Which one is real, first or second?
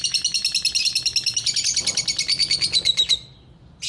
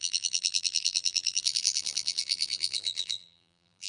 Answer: first